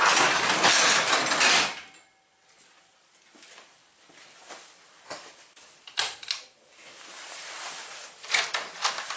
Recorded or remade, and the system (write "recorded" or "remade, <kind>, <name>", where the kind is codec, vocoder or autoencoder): recorded